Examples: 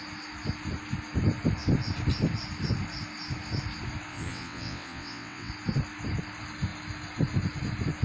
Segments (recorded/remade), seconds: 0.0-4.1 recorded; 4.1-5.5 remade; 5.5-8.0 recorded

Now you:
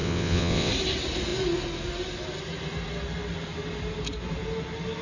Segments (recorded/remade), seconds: 0.0-0.7 remade; 0.7-5.0 recorded

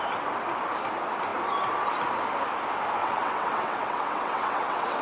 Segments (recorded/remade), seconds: 0.0-3.0 recorded; 3.0-5.0 remade